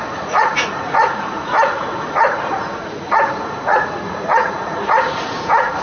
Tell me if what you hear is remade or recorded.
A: remade